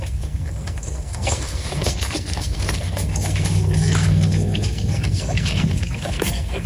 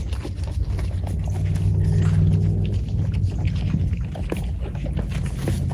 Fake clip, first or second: first